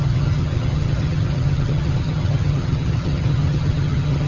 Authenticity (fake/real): fake